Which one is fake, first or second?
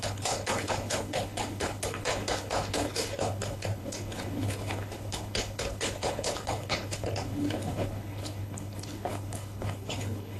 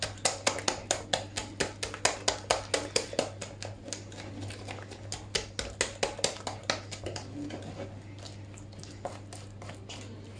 first